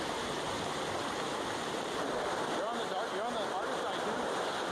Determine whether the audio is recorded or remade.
recorded